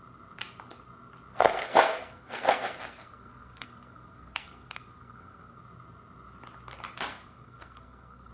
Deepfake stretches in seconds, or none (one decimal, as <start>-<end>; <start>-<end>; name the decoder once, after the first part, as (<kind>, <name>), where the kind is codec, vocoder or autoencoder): 1.3-5.6 (codec, SNAC); 7.1-8.3